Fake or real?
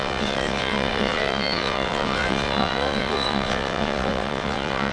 fake